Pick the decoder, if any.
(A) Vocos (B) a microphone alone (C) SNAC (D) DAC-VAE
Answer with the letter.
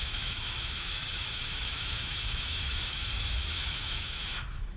D